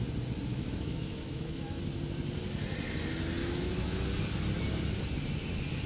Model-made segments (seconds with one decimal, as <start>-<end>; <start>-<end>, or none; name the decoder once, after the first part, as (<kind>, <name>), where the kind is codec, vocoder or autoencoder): 0.5-1.8 (autoencoder, DAC-VAE); 3.4-4.0